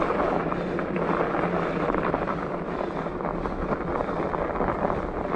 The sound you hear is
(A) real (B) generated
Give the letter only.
A